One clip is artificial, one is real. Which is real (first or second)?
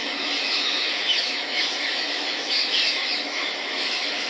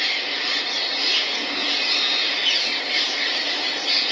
second